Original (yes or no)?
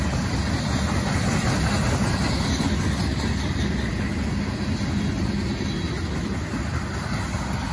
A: yes